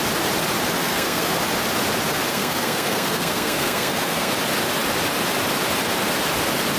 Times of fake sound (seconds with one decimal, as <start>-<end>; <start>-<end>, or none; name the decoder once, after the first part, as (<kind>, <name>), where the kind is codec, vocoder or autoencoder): 0.8-1.4 (codec, SNAC); 2.3-4.3